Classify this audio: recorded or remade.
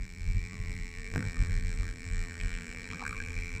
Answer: remade